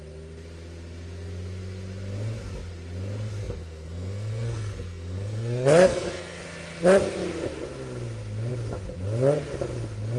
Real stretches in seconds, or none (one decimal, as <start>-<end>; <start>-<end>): 0.0-3.4; 6.4-10.2